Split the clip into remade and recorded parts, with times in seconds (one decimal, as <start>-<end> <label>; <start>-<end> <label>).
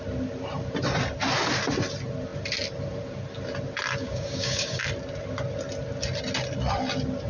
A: 0.0-4.0 recorded; 4.0-4.8 remade; 4.8-7.3 recorded